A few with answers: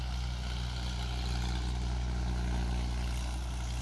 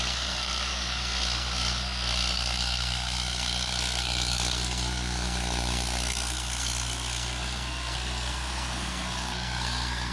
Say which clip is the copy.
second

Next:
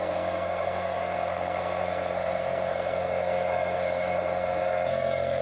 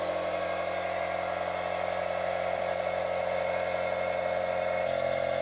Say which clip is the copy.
first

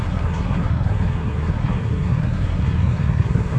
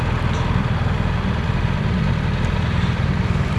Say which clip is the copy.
first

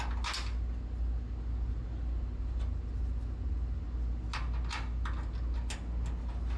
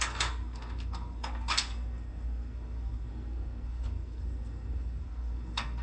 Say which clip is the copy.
second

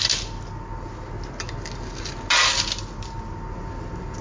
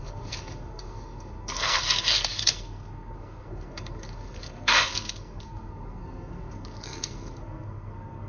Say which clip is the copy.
second